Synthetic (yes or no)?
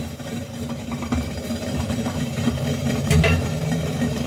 yes